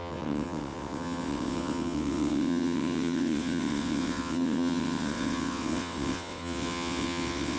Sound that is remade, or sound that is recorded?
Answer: remade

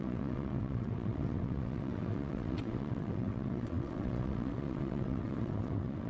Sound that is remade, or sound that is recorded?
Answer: remade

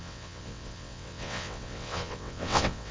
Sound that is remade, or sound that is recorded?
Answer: remade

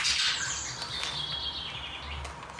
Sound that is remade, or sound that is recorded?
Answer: recorded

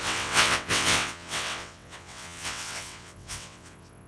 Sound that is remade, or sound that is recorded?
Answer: remade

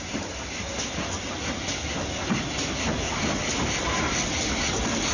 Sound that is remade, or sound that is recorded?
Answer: recorded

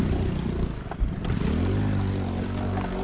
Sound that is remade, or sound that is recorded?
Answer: recorded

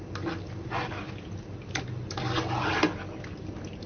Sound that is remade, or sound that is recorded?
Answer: recorded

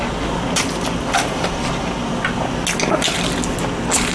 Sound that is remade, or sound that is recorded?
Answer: recorded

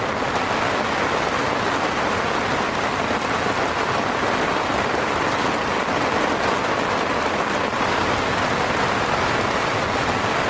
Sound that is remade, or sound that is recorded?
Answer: recorded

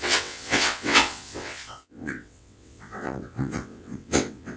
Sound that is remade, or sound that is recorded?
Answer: remade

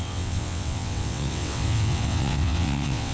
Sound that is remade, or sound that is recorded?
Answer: remade